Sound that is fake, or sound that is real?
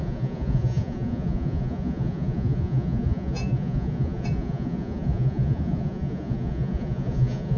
fake